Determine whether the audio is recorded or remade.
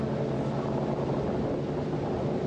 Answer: recorded